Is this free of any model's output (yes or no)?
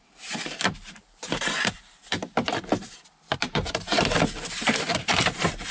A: no